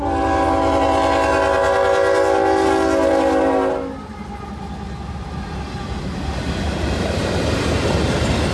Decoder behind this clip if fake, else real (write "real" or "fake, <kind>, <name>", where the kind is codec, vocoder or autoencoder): real